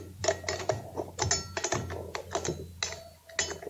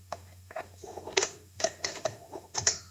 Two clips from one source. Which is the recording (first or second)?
first